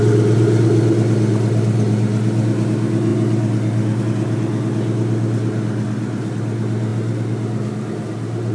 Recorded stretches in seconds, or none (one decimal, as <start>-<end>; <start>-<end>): 0.0-8.5